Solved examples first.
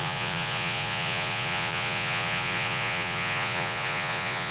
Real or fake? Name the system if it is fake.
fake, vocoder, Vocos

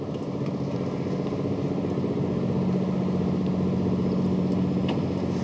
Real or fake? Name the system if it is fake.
real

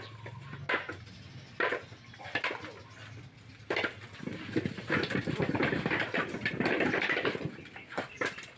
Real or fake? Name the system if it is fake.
real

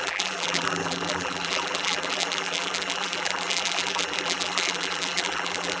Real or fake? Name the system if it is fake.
fake, vocoder, BigVGAN v2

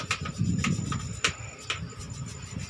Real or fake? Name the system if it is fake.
real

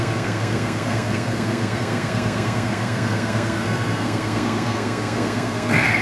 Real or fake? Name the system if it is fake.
fake, codec, SNAC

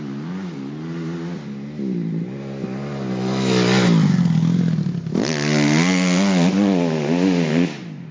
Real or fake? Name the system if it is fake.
real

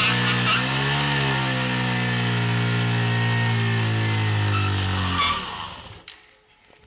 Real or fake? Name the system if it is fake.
real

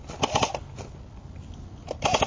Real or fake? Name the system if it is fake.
real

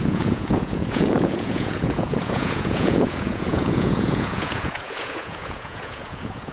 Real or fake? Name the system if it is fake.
fake, vocoder, Vocos